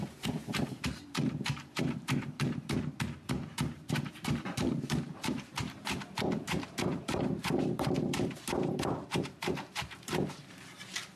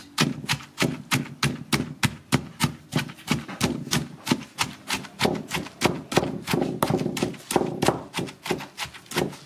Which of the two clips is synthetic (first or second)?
first